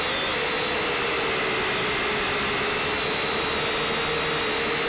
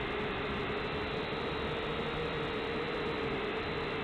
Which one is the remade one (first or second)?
second